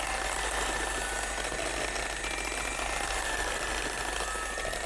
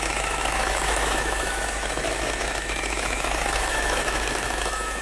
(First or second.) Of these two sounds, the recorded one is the first